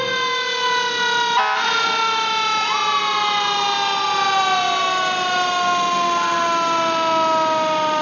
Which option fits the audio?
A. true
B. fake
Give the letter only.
A